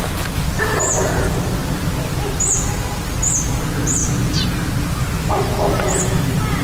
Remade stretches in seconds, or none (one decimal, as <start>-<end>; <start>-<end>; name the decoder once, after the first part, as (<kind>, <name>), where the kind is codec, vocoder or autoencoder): none